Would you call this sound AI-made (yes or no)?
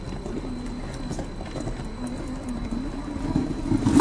no